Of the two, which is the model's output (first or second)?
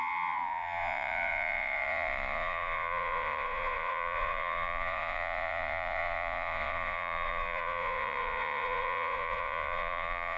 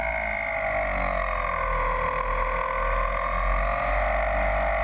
first